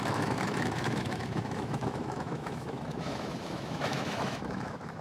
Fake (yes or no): yes